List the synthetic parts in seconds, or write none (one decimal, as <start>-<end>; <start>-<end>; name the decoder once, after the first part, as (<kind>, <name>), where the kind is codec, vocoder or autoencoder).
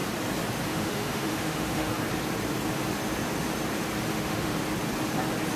0.7-1.9 (autoencoder, DAC-VAE); 4.1-4.5